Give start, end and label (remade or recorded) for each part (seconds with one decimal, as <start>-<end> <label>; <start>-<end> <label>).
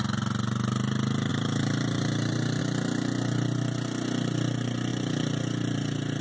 0.0-1.3 recorded; 1.3-2.6 remade; 2.6-4.9 recorded; 4.9-6.2 remade